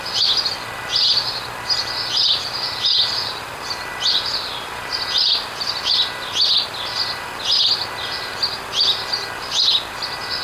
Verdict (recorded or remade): recorded